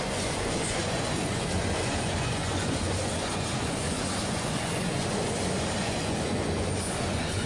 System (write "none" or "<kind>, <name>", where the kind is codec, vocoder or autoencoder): vocoder, Vocos